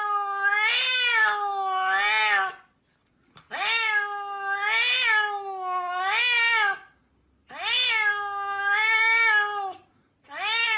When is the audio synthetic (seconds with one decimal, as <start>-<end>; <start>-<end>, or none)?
none